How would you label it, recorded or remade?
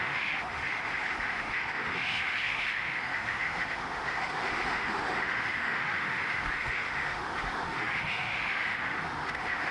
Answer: remade